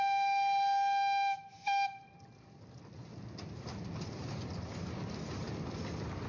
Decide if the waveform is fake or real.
real